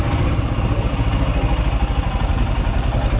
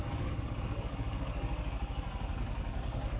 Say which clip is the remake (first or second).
second